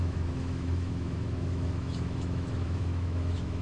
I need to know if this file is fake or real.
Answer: fake